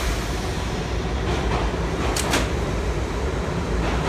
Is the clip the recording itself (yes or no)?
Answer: yes